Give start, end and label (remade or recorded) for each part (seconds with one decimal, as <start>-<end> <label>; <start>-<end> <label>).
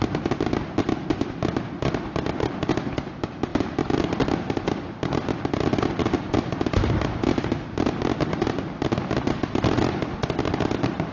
0.0-11.1 recorded